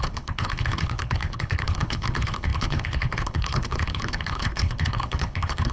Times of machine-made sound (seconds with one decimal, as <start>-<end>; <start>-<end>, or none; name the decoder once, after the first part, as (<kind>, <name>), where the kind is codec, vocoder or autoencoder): 0.0-5.7 (codec, HILCodec)